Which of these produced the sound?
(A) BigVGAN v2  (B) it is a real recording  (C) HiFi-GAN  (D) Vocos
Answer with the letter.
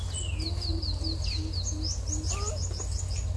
B